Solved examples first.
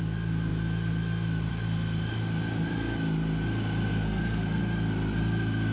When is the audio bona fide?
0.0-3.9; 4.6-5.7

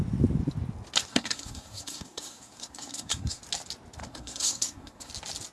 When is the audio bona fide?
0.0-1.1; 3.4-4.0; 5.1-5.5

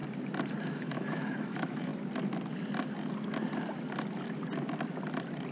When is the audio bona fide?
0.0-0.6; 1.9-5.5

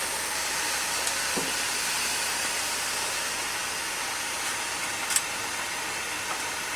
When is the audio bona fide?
0.0-6.8

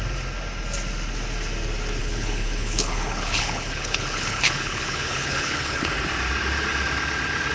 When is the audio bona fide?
0.0-2.0; 5.9-7.5

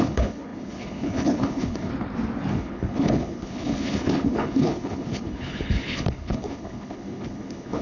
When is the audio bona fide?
1.9-2.5

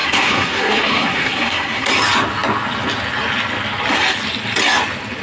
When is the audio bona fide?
1.9-5.2

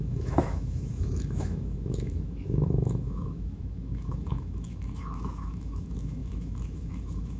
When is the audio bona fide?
none